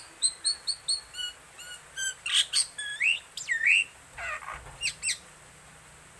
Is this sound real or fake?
real